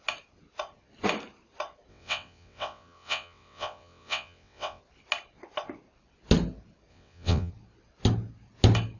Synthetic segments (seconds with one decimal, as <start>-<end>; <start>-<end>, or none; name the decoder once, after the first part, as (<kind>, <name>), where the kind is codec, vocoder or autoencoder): 1.9-4.8 (vocoder, WaveNeXt); 6.9-7.5